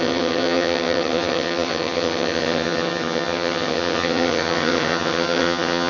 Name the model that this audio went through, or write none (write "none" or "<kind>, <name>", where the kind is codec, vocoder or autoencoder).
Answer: vocoder, HiFi-GAN